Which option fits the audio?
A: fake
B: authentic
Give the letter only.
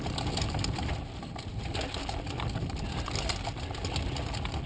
B